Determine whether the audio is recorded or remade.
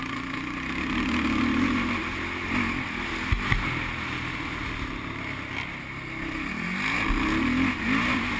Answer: recorded